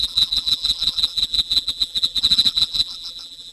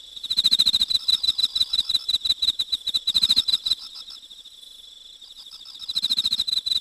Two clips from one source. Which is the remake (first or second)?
first